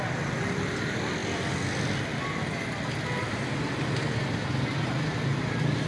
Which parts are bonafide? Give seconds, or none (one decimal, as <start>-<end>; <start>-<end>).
0.0-5.9